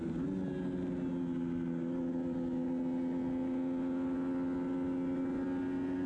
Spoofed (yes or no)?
no